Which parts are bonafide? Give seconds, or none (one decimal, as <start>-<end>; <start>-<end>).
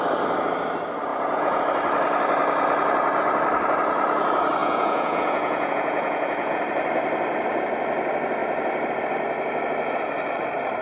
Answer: 0.0-1.1; 1.6-4.6; 6.6-10.8